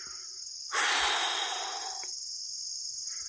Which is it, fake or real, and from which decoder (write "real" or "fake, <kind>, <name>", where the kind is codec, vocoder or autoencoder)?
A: real